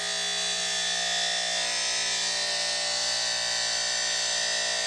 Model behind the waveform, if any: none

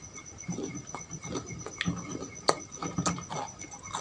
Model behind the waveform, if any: none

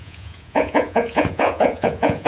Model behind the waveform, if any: vocoder, Vocos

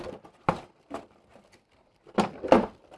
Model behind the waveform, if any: none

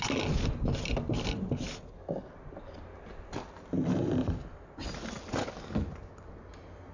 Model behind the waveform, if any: none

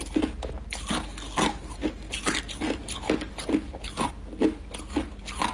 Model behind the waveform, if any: none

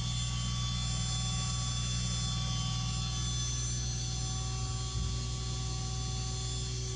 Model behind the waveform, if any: none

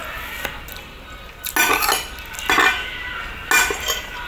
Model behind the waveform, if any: none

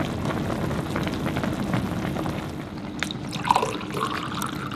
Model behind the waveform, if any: none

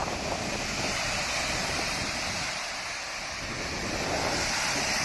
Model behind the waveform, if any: none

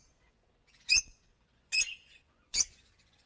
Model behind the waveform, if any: vocoder, Vocos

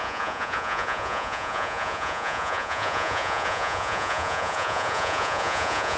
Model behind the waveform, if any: vocoder, Vocos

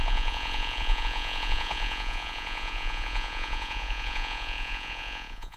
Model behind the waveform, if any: vocoder, Vocos